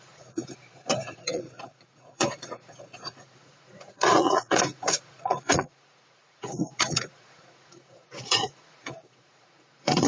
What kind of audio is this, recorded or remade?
remade